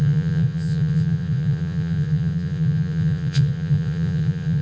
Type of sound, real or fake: fake